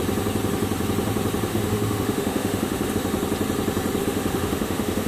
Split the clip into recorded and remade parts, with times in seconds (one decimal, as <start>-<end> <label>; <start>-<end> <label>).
0.0-1.5 recorded; 1.5-2.9 remade; 2.9-4.0 recorded; 4.0-5.1 remade